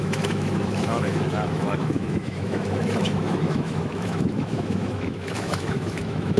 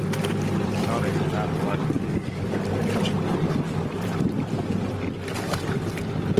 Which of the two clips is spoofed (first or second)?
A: first